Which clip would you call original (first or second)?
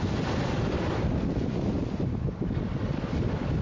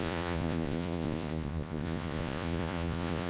first